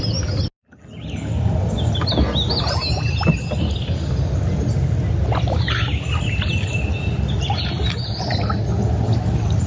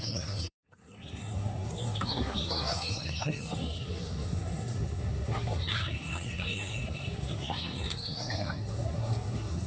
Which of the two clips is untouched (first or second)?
first